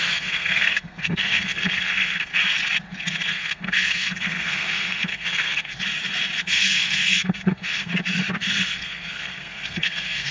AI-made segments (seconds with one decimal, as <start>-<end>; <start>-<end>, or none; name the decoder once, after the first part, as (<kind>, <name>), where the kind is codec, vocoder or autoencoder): 0.0-2.3 (codec, SNAC); 3.3-5.7; 6.4-7.9; 8.4-10.3